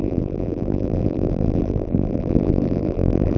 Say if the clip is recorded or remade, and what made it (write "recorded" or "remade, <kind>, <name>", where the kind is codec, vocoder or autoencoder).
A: remade, vocoder, BigVGAN v2